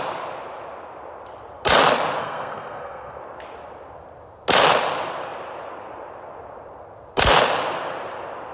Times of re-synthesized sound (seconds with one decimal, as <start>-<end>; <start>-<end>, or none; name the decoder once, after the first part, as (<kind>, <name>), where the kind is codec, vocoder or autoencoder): 2.2-3.2 (codec, SNAC)